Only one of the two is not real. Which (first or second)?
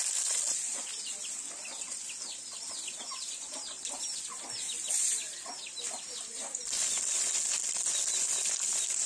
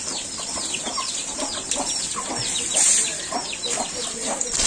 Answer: second